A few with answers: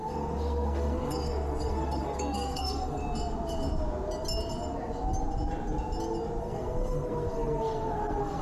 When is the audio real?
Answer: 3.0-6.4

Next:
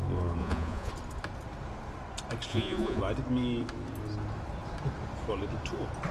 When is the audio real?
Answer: 0.0-0.4; 0.9-2.5; 3.0-6.1

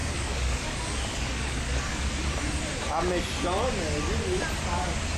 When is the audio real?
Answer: 2.1-5.2

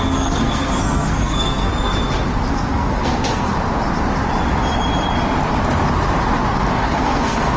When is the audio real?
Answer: 1.7-2.5; 3.5-6.7

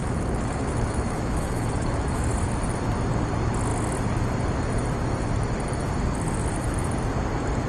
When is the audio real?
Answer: 2.2-7.7

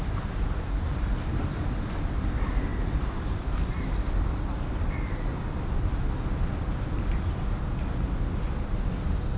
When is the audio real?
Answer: 0.0-9.4

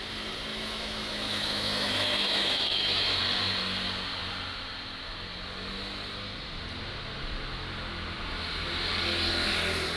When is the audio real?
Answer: 0.0-0.5; 3.2-10.0

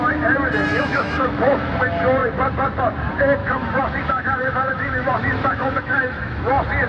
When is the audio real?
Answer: 0.0-0.7; 1.7-3.4; 6.4-6.9